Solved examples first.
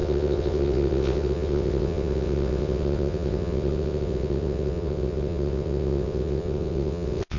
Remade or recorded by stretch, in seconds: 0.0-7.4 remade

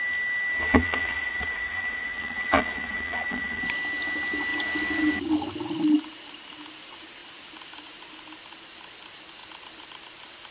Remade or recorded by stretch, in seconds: 0.0-0.7 recorded; 0.7-3.6 remade; 3.6-10.5 recorded

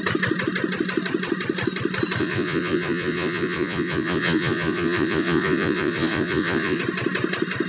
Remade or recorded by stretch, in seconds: 0.0-2.2 recorded; 2.2-6.8 remade; 6.8-7.7 recorded

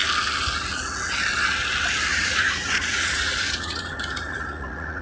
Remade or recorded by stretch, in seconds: 0.0-2.1 recorded; 2.1-5.0 remade

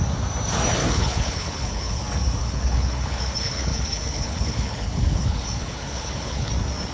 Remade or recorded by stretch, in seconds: 0.0-0.8 recorded; 0.8-2.0 remade; 2.0-2.4 recorded; 2.4-6.5 remade; 6.5-6.9 recorded

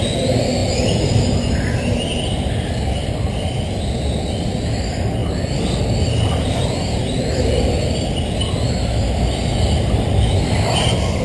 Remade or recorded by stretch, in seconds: 0.0-11.2 recorded

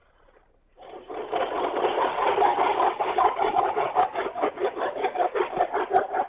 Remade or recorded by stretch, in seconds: 0.0-2.3 recorded; 2.3-5.4 remade; 5.4-6.3 recorded